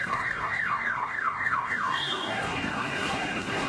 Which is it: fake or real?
fake